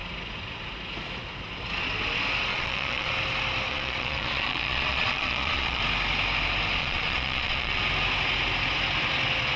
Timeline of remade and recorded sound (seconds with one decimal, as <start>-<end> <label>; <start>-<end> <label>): 0.0-2.5 recorded; 2.5-3.1 remade; 3.1-3.7 recorded; 3.7-5.8 remade; 5.8-6.8 recorded; 6.8-7.8 remade; 7.8-9.6 recorded